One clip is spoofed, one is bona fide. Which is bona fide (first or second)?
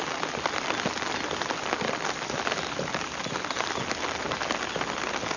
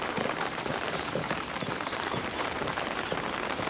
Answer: first